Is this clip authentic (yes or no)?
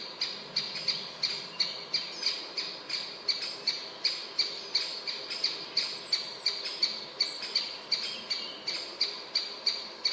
yes